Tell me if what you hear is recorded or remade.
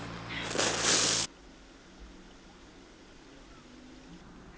recorded